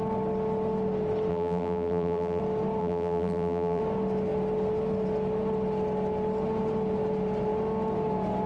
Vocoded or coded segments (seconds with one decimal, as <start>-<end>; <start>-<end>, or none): 1.3-2.4; 2.8-3.8